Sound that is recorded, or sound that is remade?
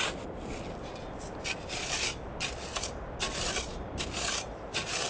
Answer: remade